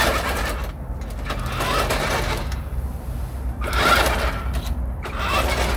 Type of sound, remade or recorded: recorded